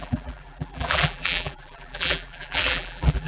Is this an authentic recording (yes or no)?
no